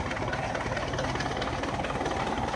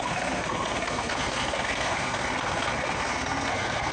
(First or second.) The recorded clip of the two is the first